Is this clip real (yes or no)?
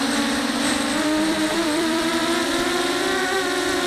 no